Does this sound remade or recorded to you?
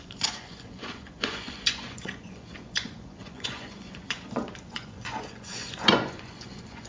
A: remade